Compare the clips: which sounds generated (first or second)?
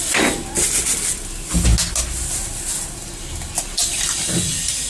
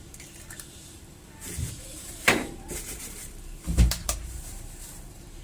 second